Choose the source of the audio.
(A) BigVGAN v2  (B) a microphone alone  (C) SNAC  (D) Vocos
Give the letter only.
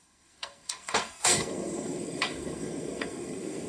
C